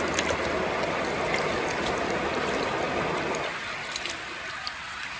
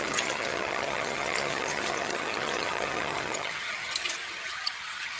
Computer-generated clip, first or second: second